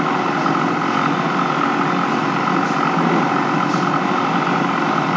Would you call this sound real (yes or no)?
yes